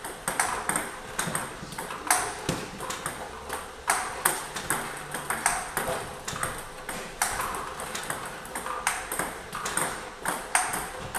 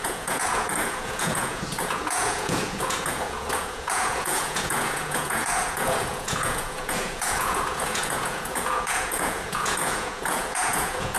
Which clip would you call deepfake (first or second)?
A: second